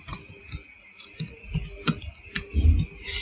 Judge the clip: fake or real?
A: real